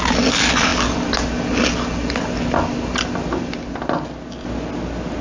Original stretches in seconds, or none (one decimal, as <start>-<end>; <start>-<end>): 0.0-5.2